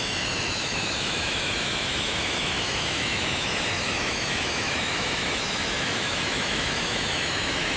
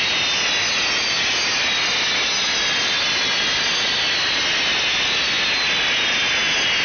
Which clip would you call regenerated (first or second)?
first